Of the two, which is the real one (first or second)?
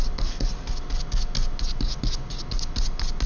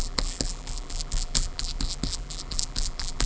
first